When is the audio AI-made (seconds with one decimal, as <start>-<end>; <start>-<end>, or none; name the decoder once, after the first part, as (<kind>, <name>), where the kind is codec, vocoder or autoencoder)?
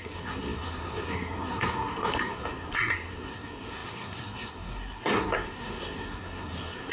0.0-6.9 (codec, SNAC)